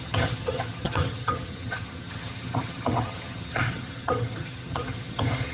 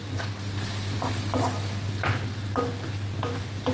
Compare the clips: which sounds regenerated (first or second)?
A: first